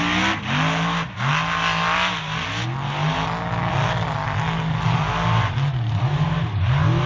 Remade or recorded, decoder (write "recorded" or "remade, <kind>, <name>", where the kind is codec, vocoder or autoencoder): recorded